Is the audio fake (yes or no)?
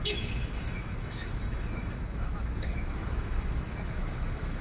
yes